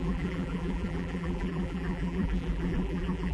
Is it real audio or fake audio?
fake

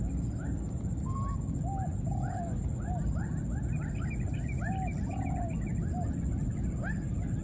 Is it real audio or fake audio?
real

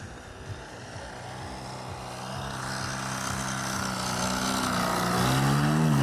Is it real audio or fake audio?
real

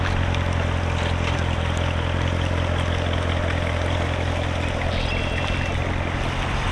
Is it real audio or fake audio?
real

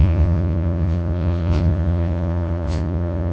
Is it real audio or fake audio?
fake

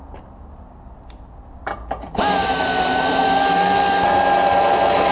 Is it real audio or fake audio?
real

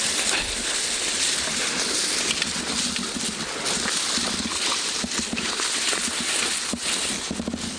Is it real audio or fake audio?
real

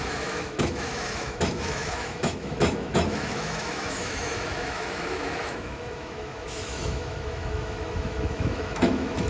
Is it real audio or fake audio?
fake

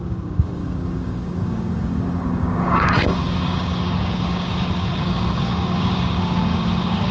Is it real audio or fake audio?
fake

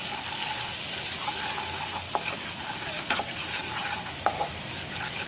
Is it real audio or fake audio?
real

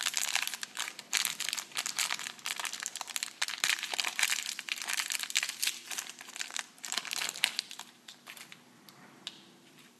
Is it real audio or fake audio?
fake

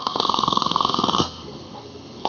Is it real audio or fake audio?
fake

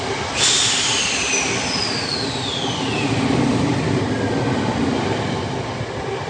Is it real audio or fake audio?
real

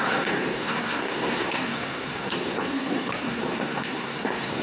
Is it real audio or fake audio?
fake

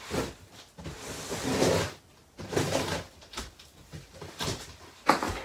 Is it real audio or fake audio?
real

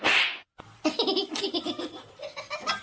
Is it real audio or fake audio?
fake